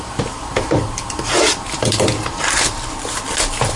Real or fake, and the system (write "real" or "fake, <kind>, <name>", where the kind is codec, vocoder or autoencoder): real